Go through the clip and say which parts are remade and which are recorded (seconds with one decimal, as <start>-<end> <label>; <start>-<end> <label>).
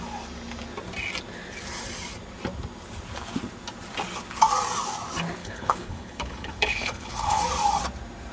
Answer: 0.0-5.4 recorded; 5.4-7.4 remade; 7.4-8.3 recorded